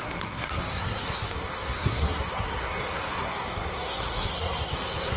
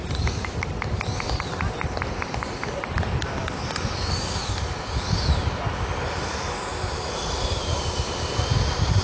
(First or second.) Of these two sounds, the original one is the second